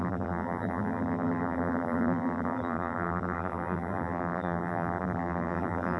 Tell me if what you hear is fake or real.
fake